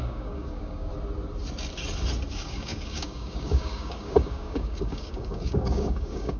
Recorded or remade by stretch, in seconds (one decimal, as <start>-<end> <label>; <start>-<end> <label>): 0.0-0.9 remade; 0.9-2.3 recorded; 2.3-6.4 remade